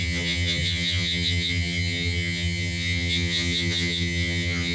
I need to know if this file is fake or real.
fake